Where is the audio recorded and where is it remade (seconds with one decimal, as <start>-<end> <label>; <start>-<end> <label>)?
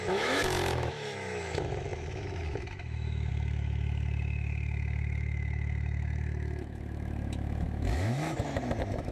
0.0-9.1 remade